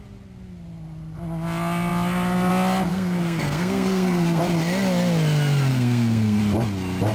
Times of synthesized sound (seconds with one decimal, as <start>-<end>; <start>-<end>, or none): 2.9-4.4; 5.7-6.4